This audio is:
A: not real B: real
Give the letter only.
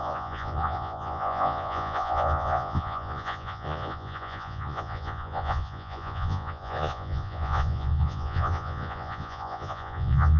A